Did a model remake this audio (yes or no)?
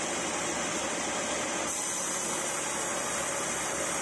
no